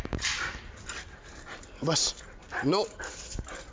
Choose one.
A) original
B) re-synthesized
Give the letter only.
B